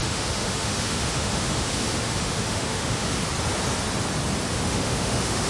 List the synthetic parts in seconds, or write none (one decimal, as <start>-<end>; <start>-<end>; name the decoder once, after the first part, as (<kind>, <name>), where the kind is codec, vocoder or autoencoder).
0.0-3.3 (autoencoder, DAC-VAE); 4.5-5.5